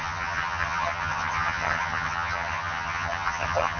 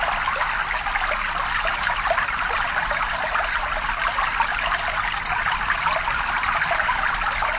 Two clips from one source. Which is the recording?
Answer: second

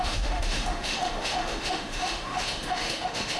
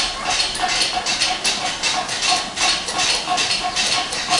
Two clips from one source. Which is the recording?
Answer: second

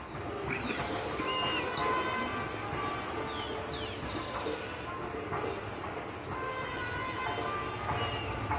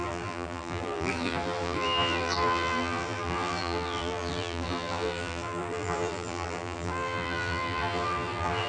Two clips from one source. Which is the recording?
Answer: first